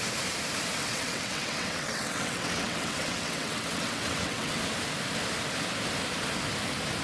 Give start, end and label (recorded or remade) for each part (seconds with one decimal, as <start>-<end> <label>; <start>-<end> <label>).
0.0-0.8 recorded; 0.8-4.6 remade; 4.6-7.0 recorded